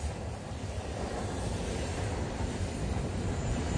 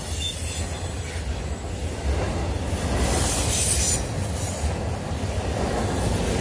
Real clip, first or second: second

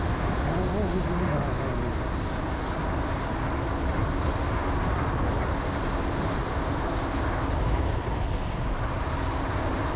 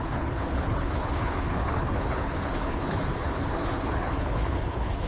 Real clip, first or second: first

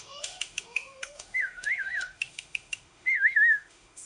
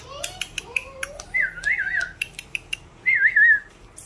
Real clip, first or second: second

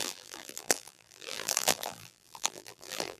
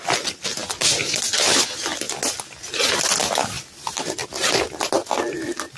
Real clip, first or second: second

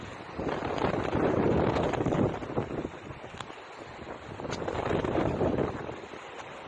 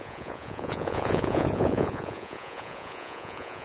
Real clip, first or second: first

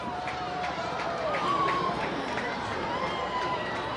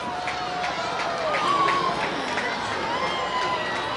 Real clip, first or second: second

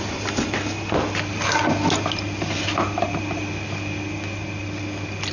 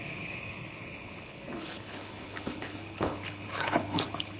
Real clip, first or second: first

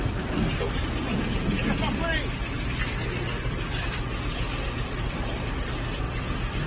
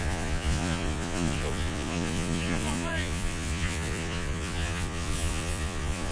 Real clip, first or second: first